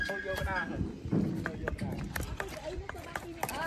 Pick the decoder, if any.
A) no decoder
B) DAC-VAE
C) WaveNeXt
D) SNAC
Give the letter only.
A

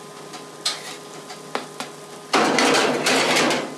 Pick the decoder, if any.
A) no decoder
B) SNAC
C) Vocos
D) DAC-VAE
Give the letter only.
A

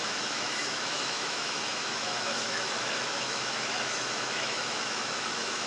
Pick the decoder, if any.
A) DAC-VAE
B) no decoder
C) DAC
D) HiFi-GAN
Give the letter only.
A